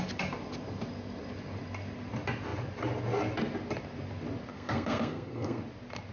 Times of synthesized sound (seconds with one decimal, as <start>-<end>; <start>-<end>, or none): 4.5-5.6